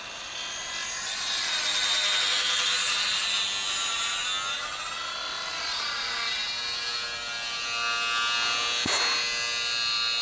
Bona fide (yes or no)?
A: yes